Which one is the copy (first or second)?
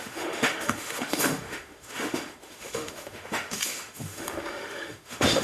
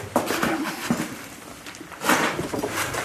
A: first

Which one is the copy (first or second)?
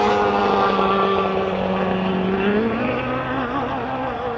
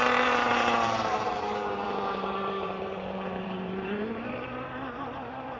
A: second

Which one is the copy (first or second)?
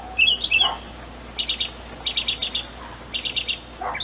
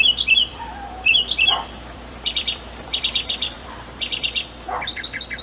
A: second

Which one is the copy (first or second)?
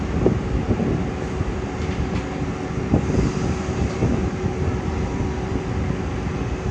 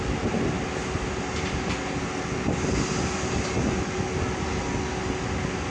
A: first